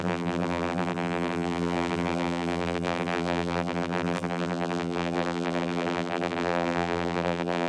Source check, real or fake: fake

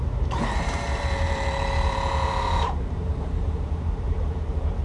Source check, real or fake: fake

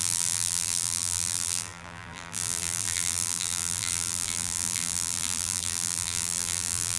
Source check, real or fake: fake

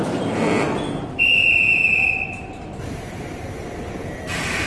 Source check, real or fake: fake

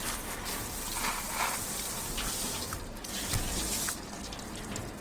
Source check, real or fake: real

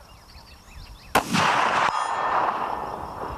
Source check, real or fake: real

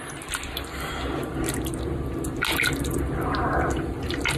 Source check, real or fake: real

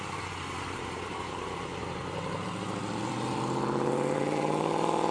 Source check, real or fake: fake